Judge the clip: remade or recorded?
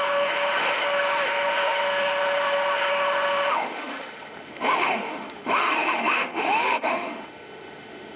remade